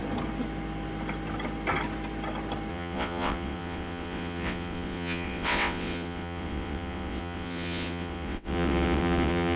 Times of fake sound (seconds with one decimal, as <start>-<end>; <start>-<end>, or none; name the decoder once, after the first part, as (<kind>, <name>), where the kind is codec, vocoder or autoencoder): 2.7-9.6 (vocoder, WaveNeXt)